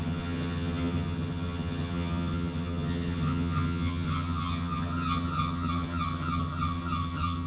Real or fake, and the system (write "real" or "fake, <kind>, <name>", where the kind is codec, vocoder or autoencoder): fake, vocoder, HiFi-GAN